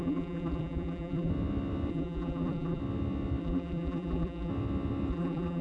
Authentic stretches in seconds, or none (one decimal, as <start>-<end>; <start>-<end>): 1.3-1.9; 2.8-3.4; 4.5-5.1